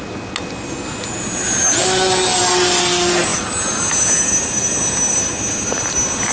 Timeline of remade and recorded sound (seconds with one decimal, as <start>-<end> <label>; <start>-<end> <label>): 0.0-6.3 recorded